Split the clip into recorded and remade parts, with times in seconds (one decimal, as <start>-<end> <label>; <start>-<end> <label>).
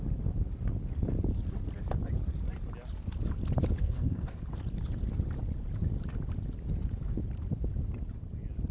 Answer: 0.0-3.8 recorded; 3.8-4.4 remade; 4.4-8.7 recorded